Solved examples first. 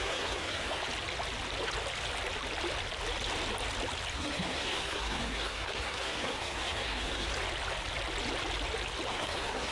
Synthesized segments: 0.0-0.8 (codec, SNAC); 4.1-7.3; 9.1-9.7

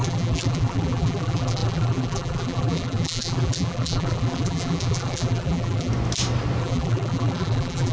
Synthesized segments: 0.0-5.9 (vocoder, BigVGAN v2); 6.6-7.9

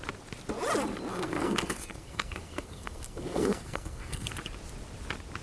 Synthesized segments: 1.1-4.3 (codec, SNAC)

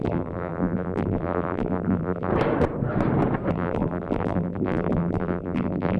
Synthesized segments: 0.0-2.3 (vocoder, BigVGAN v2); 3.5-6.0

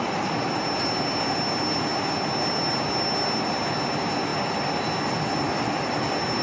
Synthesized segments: none

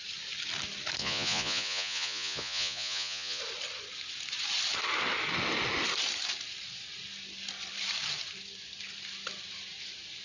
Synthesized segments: 1.0-3.4 (vocoder, Vocos)